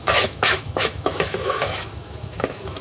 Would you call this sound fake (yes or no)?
yes